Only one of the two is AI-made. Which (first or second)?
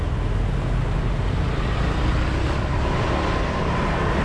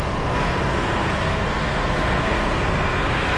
second